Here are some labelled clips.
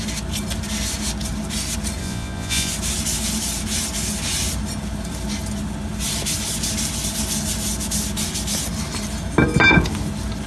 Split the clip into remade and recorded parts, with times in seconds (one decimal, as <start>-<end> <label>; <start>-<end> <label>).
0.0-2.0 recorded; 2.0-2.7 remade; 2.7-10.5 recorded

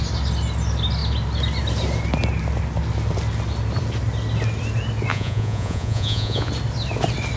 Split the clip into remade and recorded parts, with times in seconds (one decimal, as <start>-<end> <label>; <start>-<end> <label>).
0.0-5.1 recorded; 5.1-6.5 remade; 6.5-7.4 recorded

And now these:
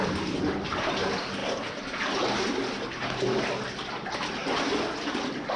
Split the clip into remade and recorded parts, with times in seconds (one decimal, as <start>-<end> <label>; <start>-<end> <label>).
0.0-5.6 recorded

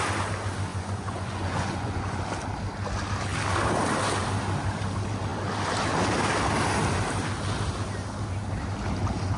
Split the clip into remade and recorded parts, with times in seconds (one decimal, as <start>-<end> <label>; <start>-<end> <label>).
0.0-0.7 recorded; 0.7-2.2 remade; 2.2-9.4 recorded

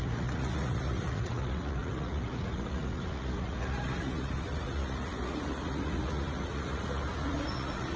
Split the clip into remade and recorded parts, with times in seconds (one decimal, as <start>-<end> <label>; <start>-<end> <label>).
0.0-8.0 remade

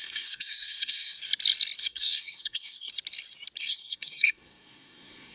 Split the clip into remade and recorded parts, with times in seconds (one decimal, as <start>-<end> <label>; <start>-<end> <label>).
0.0-1.2 remade; 1.2-1.8 recorded; 1.8-2.9 remade; 2.9-3.6 recorded; 3.6-5.3 remade

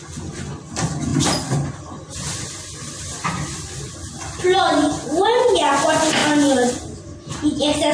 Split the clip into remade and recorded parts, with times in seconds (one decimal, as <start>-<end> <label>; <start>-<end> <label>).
0.0-7.9 recorded

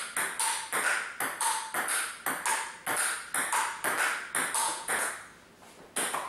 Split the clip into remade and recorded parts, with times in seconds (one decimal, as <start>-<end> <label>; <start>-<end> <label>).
0.0-4.6 recorded; 4.6-5.1 remade; 5.1-6.3 recorded